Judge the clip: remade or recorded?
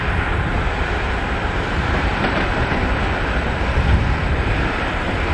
remade